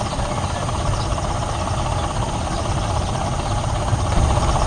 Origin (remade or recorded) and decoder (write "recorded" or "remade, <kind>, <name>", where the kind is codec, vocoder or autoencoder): recorded